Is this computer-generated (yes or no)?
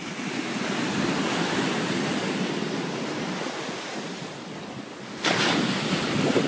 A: no